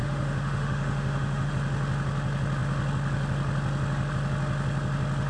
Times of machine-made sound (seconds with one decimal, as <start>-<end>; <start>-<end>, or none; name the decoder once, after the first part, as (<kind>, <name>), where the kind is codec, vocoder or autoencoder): 0.0-1.5 (autoencoder, DAC-VAE)